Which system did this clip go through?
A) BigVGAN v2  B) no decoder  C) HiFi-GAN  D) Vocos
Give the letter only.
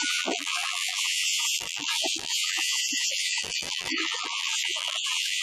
A